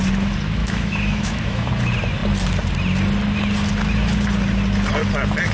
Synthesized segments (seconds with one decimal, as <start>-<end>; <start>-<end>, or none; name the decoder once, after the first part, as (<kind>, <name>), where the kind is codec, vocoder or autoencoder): 0.6-1.7 (autoencoder, DAC-VAE)